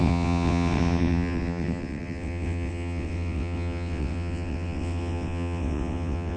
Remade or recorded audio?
remade